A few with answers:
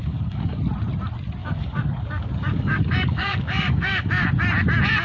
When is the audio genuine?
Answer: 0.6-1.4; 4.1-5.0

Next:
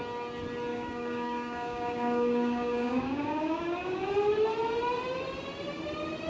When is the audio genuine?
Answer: 0.0-0.7; 4.0-6.3

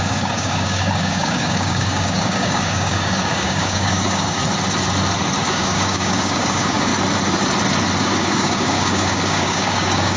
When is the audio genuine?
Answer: 4.4-5.4; 6.9-8.0

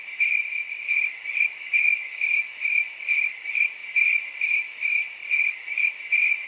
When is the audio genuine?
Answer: 0.0-1.5; 2.2-6.5